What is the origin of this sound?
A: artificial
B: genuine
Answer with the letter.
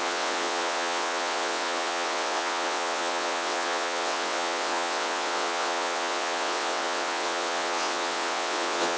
A